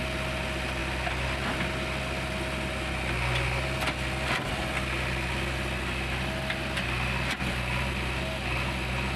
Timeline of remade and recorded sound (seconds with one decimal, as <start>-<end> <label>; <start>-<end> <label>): 0.0-9.2 recorded